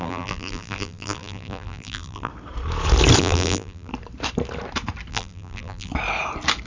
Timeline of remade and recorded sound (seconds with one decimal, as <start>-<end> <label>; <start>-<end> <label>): 0.0-2.3 remade; 2.3-3.2 recorded; 3.2-3.9 remade; 3.9-5.1 recorded; 5.1-5.9 remade; 5.9-6.7 recorded